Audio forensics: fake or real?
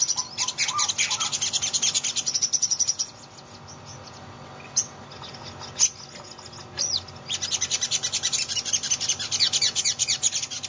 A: real